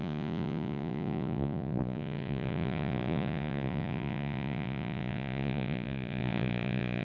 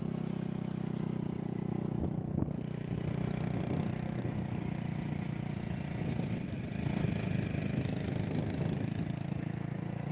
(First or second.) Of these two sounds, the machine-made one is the first